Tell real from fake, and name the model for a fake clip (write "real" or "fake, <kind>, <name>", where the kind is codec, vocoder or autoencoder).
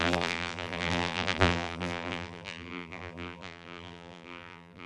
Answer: fake, vocoder, BigVGAN v2